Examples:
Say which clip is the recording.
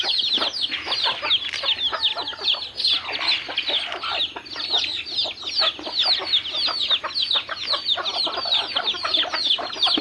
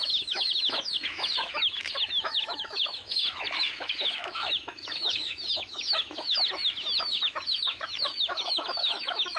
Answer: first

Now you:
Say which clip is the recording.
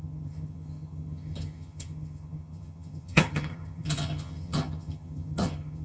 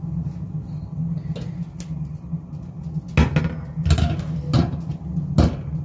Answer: second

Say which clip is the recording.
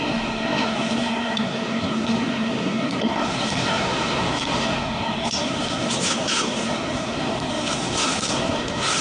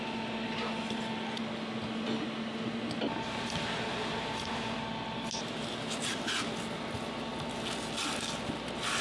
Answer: second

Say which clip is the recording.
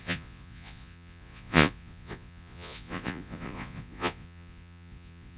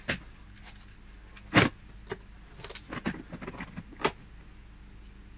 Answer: second